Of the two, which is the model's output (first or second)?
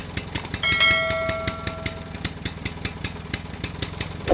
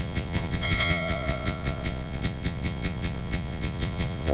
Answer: second